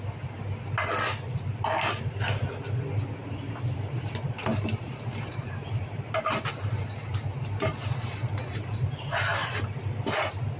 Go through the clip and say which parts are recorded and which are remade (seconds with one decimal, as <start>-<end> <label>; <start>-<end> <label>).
0.0-3.2 recorded; 3.2-7.2 remade; 7.2-7.8 recorded; 7.8-9.8 remade; 9.8-10.6 recorded